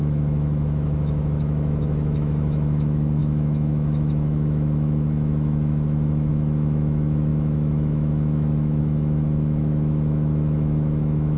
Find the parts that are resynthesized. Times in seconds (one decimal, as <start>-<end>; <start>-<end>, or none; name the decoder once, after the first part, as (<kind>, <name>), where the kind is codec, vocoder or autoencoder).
0.0-11.4 (autoencoder, DAC-VAE)